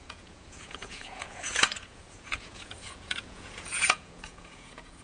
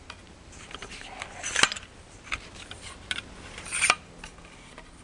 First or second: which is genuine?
second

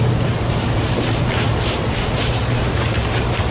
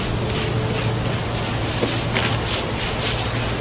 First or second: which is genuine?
second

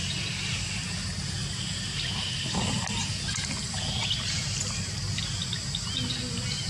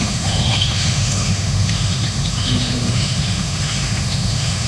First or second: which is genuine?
first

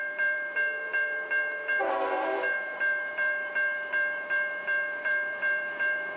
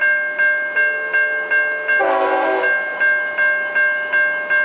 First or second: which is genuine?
second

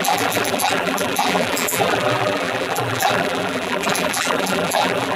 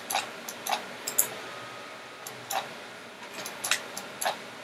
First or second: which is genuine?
second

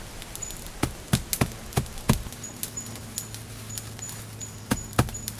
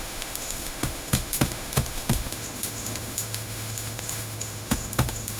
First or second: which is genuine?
first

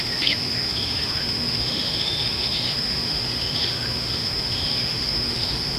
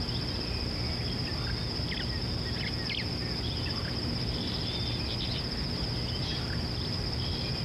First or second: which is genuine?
second